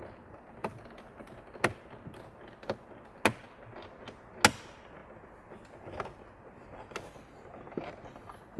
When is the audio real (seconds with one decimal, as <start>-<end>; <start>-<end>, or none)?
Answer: 0.0-0.6; 1.2-8.6